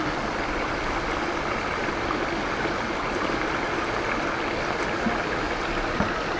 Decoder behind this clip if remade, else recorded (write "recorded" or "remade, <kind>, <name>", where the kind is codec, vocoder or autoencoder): recorded